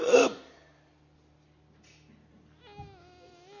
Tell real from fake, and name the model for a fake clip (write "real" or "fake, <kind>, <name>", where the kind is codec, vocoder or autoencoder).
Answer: real